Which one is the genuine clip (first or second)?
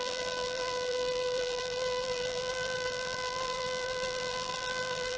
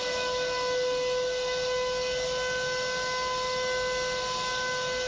second